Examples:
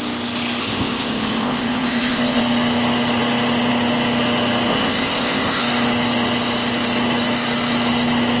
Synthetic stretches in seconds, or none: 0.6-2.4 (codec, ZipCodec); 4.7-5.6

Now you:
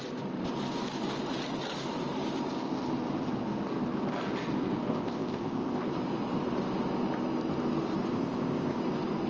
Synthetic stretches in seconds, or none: 4.9-5.8 (codec, ZipCodec); 8.1-8.8

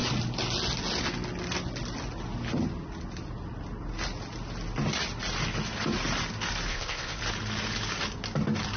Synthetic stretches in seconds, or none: 6.7-7.2 (codec, ZipCodec)

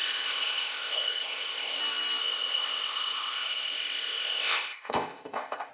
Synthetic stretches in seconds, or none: 0.0-1.8 (codec, ZipCodec); 2.2-5.7

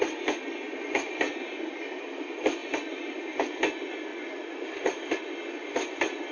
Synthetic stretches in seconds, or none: none

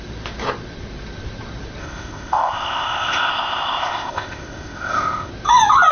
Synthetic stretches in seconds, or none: 1.8-5.3 (codec, ZipCodec)